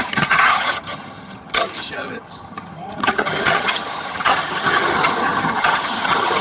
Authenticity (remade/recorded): remade